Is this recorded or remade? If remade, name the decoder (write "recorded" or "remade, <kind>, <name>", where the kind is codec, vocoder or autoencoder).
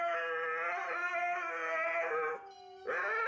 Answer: recorded